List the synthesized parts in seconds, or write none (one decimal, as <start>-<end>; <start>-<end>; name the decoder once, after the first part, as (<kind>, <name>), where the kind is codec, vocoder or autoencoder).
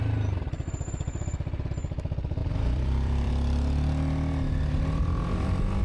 2.4-3.3 (vocoder, BigVGAN v2)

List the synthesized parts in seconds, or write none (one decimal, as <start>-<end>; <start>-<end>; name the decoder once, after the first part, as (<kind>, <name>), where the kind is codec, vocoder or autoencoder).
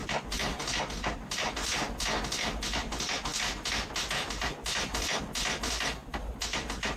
none